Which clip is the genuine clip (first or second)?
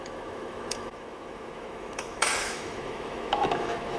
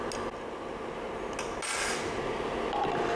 second